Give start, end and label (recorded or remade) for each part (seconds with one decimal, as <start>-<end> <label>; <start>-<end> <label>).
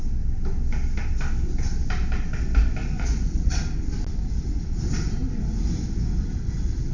0.0-2.8 recorded; 2.8-3.6 remade; 3.6-6.9 recorded